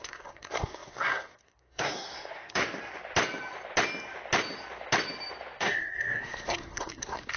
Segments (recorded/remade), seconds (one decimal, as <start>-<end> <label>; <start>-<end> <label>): 0.0-2.6 remade; 2.6-5.6 recorded; 5.6-7.4 remade